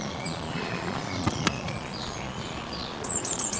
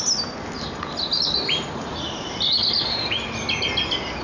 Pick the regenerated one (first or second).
first